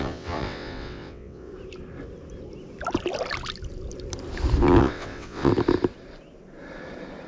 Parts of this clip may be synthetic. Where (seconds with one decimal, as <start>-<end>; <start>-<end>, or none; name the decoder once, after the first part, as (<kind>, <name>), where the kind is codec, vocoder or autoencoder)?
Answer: 0.0-1.5 (vocoder, WaveNeXt); 4.8-5.5